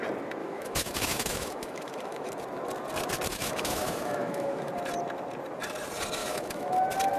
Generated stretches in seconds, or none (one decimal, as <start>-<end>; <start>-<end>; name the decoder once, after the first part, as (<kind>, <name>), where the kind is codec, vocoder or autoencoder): 0.4-2.3 (autoencoder, DAC-VAE); 3.3-4.7; 6.2-6.7